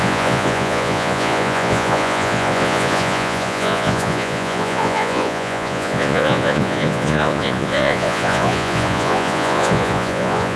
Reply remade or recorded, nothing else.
remade